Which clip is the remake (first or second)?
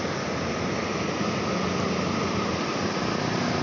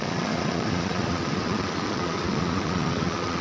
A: second